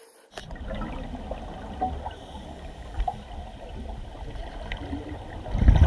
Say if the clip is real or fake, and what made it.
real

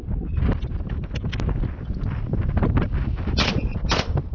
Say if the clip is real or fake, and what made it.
real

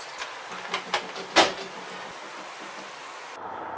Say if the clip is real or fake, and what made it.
real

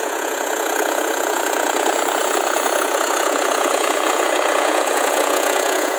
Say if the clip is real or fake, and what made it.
fake, vocoder, Vocos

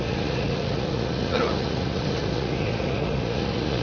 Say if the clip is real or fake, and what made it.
fake, vocoder, Vocos